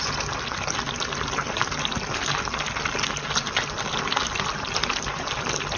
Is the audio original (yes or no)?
yes